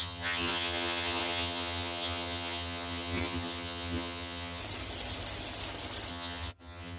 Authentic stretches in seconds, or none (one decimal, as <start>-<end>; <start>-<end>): 4.6-6.1